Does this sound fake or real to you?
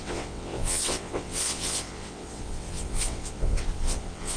fake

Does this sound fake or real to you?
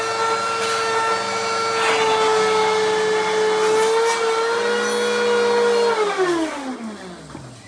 real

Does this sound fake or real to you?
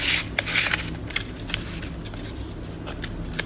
real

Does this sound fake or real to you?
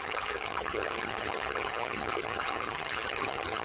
fake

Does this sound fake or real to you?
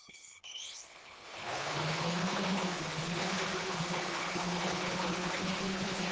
fake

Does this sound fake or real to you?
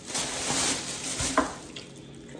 real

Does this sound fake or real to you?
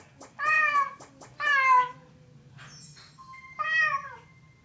real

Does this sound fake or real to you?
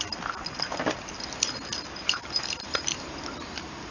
real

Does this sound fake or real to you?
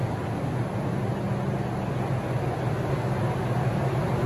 real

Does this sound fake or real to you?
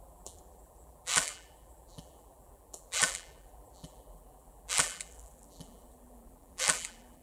fake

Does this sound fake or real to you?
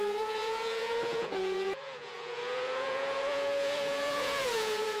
fake